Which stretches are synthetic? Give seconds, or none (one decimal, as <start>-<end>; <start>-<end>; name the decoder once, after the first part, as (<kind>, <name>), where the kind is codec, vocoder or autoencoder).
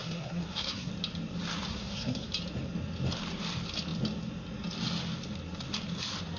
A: 0.0-0.9 (codec, SNAC); 1.7-2.3